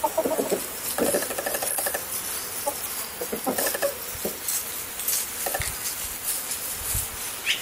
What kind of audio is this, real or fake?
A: real